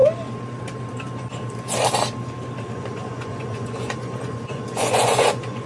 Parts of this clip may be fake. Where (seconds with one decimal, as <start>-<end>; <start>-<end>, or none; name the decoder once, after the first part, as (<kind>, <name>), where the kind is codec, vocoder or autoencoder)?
2.7-5.7 (vocoder, Vocos)